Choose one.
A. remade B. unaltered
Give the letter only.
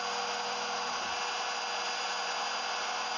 B